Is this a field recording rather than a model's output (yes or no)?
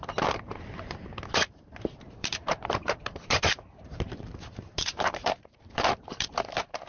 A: no